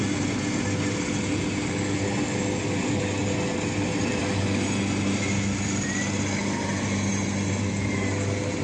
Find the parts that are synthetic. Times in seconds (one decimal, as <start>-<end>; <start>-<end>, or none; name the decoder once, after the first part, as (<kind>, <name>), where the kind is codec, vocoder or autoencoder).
none